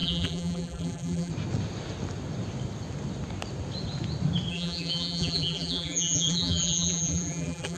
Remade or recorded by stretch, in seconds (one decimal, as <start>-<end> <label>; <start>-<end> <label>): 0.0-1.3 remade; 1.3-4.5 recorded; 4.5-7.8 remade